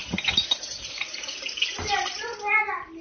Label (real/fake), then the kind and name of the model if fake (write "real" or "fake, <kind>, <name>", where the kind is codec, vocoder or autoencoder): real